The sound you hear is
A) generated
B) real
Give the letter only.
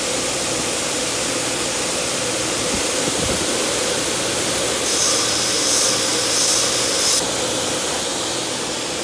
A